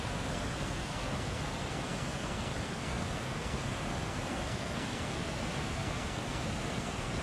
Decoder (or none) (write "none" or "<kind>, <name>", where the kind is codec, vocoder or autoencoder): codec, SNAC